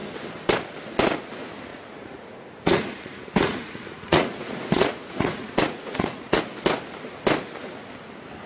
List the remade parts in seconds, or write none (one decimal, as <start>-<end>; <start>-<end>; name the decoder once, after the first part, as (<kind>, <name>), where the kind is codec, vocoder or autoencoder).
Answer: 1.7-6.4 (vocoder, Vocos)